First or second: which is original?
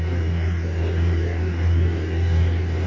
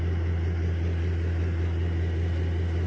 second